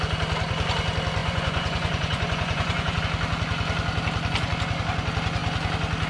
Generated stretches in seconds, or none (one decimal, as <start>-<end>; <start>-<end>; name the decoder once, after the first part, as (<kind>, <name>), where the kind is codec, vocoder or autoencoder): 1.2-3.0 (vocoder, Vocos)